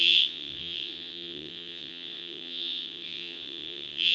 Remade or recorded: remade